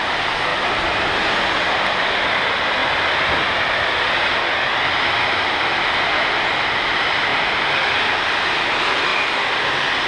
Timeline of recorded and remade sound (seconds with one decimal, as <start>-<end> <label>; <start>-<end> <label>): 0.0-0.5 recorded; 0.5-1.3 remade; 1.3-7.3 recorded; 7.3-8.1 remade; 8.1-10.1 recorded